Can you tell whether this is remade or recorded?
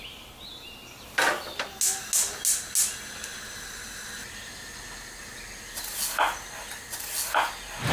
recorded